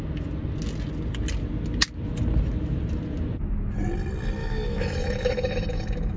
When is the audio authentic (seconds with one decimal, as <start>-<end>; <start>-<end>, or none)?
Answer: 0.0-4.4